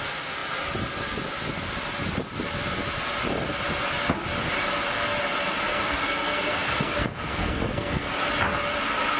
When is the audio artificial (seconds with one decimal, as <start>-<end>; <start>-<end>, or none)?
5.7-8.1